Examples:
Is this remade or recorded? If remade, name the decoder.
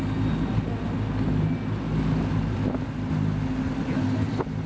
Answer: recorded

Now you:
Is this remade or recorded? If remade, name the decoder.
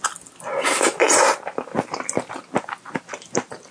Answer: recorded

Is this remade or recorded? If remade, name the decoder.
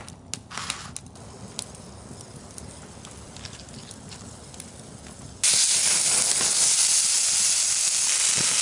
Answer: recorded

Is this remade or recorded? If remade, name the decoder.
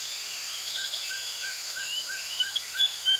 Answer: remade, autoencoder, DAC-VAE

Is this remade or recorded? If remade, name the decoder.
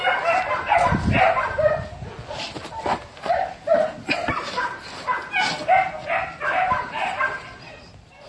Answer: recorded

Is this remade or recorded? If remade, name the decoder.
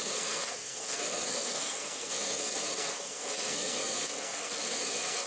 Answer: remade, codec, SNAC